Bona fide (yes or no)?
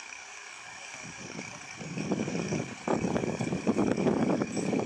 no